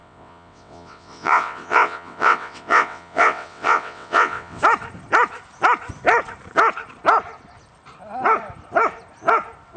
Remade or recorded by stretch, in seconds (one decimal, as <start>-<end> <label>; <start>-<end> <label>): 0.0-4.6 remade; 4.6-9.8 recorded